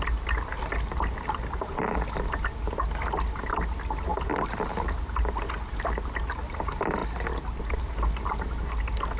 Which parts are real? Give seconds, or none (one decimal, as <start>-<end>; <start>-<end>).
0.0-9.2